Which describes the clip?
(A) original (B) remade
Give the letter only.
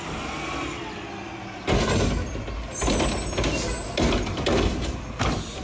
A